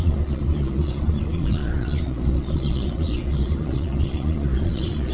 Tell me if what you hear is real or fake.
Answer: fake